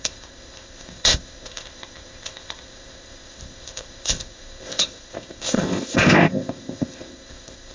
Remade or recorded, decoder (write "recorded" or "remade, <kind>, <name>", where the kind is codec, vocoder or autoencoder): remade, codec, ZipCodec